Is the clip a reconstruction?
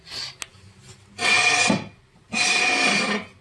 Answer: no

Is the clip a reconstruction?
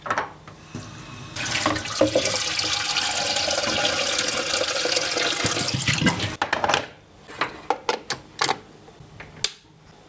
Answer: no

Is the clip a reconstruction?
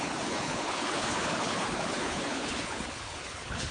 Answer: yes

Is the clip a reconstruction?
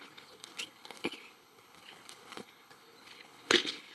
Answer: yes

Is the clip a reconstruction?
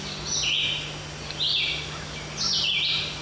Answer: no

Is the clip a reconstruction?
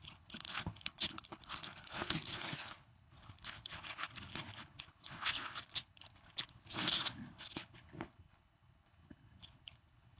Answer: yes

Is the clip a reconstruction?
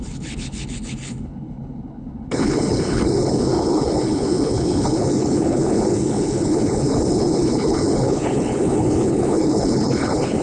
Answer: yes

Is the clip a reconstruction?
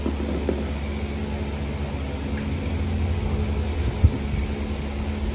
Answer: no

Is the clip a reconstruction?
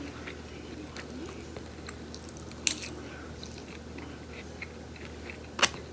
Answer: no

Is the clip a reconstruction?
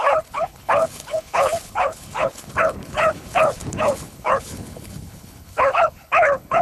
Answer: yes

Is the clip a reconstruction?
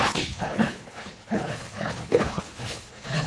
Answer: yes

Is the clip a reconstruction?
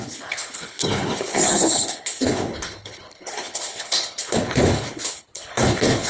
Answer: yes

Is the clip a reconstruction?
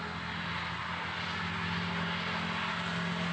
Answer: no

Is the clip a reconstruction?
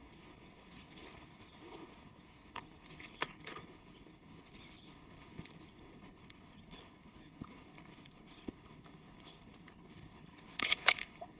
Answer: yes